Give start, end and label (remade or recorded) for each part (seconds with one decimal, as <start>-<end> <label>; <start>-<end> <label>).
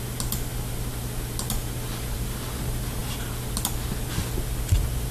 0.0-5.1 recorded